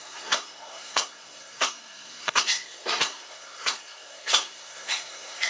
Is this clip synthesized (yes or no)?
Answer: yes